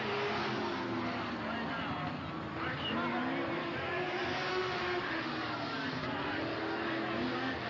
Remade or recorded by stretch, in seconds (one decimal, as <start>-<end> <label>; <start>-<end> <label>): 0.0-4.5 recorded; 4.5-5.3 remade; 5.3-7.7 recorded